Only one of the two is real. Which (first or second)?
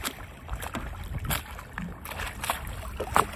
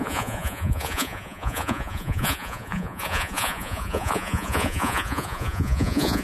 first